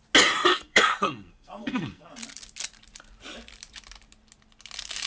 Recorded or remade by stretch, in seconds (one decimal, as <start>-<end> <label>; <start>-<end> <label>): 0.0-0.5 recorded; 0.5-2.1 remade; 2.1-5.1 recorded